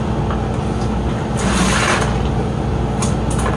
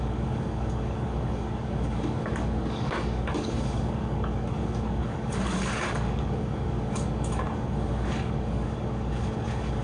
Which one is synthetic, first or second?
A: second